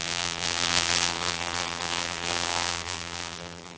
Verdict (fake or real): fake